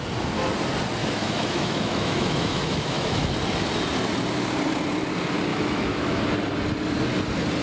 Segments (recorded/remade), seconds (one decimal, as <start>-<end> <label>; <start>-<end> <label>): 0.0-1.0 recorded; 1.0-3.3 remade; 3.3-5.5 recorded; 5.5-6.2 remade; 6.2-7.6 recorded